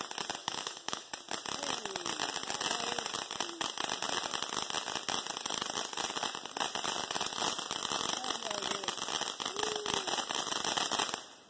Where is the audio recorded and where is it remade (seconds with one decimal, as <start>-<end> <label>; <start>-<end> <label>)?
0.0-0.4 recorded; 0.4-1.1 remade; 1.1-11.5 recorded